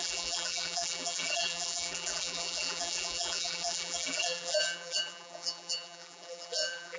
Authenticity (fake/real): fake